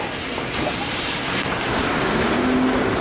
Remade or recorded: recorded